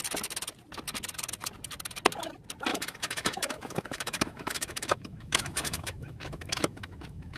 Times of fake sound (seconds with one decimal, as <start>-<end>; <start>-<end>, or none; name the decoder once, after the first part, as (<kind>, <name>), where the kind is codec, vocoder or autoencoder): 2.7-7.4 (autoencoder, DAC-VAE)